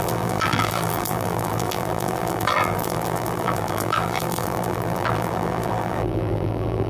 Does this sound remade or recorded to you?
remade